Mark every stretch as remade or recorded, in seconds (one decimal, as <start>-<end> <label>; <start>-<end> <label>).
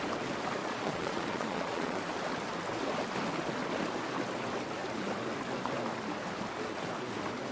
0.0-0.6 recorded; 0.6-2.0 remade; 2.0-7.5 recorded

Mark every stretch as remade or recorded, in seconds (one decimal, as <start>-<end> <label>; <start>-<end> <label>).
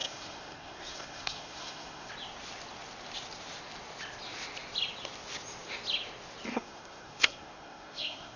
0.0-2.1 remade; 2.1-6.5 recorded; 6.5-8.4 remade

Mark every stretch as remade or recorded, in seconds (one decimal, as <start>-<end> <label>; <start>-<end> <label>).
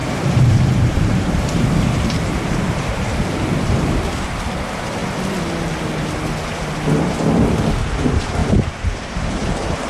0.0-5.0 remade; 5.0-7.9 recorded; 7.9-9.9 remade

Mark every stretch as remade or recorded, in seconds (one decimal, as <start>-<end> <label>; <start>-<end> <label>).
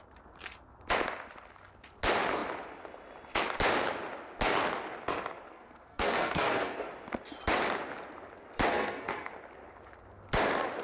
0.0-5.5 recorded; 5.5-6.9 remade; 6.9-8.7 recorded; 8.7-9.3 remade; 9.3-10.8 recorded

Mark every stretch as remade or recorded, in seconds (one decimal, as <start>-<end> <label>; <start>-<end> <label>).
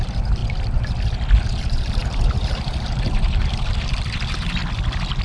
0.0-0.4 remade; 0.4-1.6 recorded; 1.6-4.6 remade; 4.6-5.2 recorded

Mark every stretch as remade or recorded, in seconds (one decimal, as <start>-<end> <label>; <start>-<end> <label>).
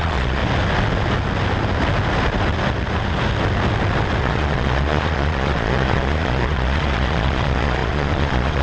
0.0-0.4 remade; 0.4-4.2 recorded; 4.2-8.6 remade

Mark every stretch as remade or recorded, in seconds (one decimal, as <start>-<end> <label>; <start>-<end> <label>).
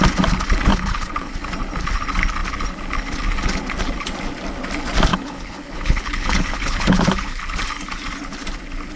0.0-0.7 recorded; 0.7-1.3 remade; 1.3-5.1 recorded; 5.1-7.4 remade; 7.4-9.0 recorded